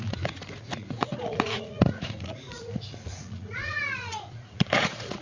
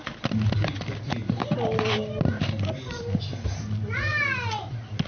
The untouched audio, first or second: second